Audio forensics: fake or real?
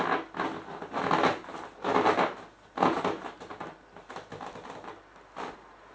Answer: real